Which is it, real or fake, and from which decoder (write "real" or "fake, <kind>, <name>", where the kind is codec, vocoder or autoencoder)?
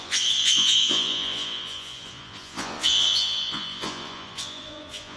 fake, vocoder, Vocos